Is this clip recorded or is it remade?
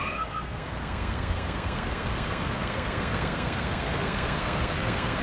remade